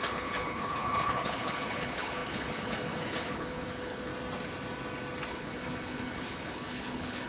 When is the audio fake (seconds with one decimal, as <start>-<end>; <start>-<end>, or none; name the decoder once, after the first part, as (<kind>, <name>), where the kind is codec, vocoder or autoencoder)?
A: 0.0-4.1 (codec, HILCodec); 5.3-7.3